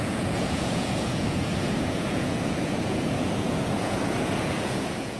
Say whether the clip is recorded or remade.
remade